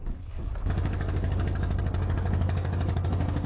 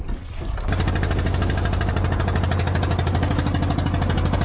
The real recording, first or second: second